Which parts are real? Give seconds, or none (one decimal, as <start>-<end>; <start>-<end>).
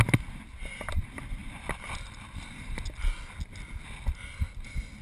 0.0-5.0